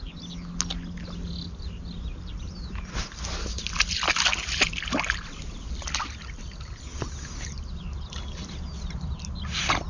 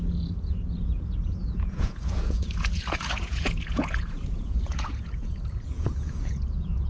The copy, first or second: second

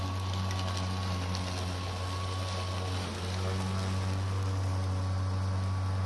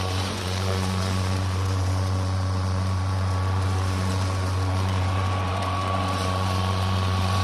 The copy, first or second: second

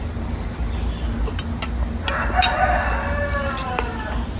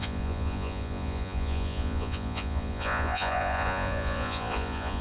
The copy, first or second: second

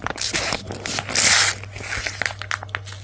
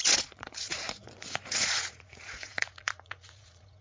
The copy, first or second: second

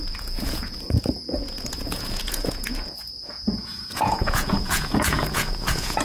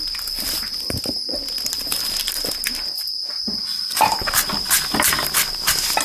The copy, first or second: first